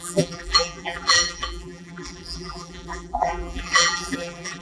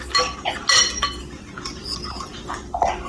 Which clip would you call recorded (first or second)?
second